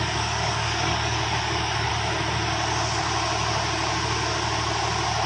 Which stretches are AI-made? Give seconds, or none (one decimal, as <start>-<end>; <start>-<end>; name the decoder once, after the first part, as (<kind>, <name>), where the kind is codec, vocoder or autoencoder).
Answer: 0.0-1.9 (codec, DAC)